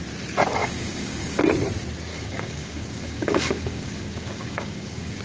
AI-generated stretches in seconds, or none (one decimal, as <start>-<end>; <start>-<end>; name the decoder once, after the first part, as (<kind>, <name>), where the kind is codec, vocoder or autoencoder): 0.6-1.4 (codec, DAC); 2.1-5.2